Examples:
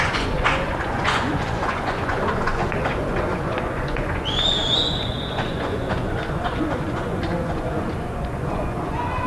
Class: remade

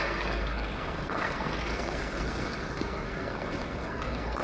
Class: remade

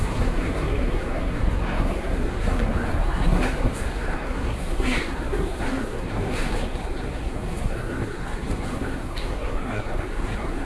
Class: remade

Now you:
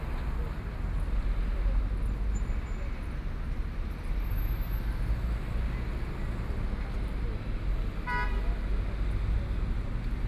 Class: recorded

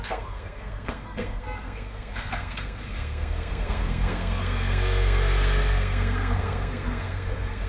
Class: remade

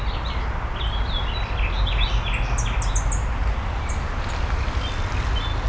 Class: recorded